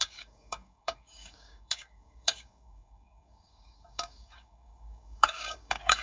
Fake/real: fake